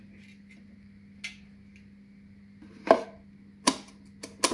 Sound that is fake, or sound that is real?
real